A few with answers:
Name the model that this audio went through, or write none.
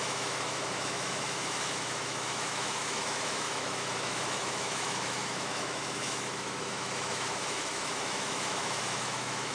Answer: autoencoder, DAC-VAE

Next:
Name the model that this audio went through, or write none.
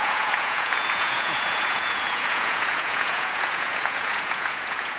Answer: vocoder, Vocos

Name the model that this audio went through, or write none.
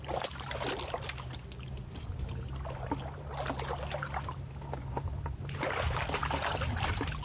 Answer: none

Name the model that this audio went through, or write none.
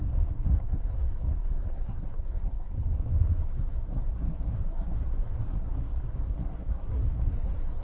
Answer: codec, SNAC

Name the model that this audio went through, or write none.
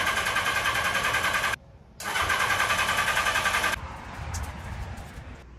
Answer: none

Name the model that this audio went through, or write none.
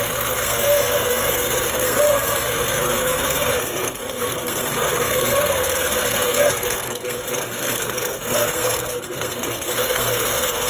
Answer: codec, SNAC